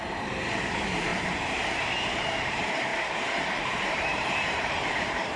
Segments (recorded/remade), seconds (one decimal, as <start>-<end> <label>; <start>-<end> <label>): 0.0-5.4 remade